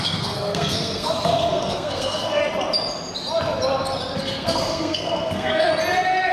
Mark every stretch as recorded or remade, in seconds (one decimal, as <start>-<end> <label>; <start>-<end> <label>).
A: 0.0-2.4 remade; 2.4-4.2 recorded; 4.2-5.7 remade; 5.7-6.3 recorded